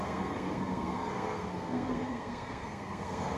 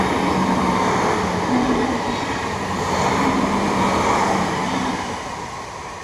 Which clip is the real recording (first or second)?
second